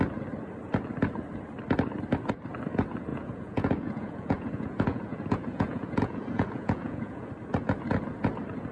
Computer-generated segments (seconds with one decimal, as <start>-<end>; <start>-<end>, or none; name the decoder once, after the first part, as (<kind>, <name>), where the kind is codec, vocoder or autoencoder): 3.1-7.3 (vocoder, Vocos)